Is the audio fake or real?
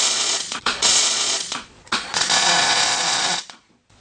fake